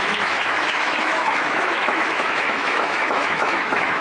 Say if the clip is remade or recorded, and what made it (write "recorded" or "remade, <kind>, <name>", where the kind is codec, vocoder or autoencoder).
remade, autoencoder, DAC-VAE